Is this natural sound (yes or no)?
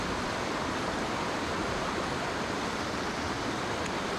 yes